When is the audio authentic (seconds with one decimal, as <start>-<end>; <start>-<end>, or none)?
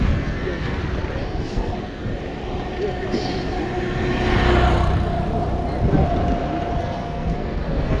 0.8-1.4; 2.0-6.8